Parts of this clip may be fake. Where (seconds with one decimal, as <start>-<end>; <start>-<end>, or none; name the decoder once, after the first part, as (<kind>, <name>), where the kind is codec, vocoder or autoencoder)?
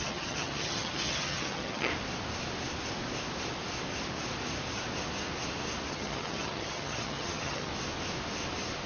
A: 0.0-1.9 (vocoder, HiFi-GAN); 5.9-7.7